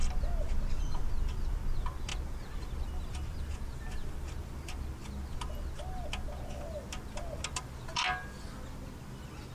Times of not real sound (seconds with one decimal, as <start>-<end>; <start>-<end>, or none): none